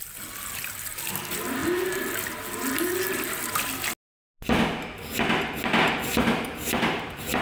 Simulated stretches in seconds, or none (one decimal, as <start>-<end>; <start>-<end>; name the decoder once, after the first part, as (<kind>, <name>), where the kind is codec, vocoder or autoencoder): 6.1-7.4 (vocoder, BigVGAN v2)